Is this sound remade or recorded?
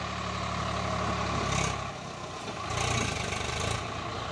recorded